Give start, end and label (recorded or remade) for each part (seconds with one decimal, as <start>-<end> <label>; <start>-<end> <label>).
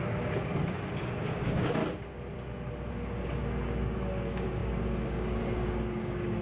0.0-1.8 remade; 1.8-2.9 recorded; 2.9-6.4 remade